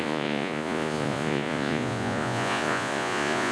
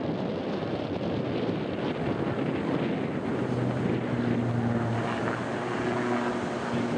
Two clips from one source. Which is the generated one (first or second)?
first